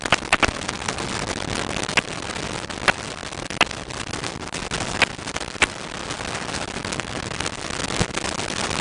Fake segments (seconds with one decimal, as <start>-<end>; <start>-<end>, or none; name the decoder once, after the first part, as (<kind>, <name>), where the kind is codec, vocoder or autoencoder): none